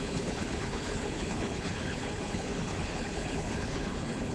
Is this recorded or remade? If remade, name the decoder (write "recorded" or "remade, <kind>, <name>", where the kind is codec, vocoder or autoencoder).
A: remade, codec, HILCodec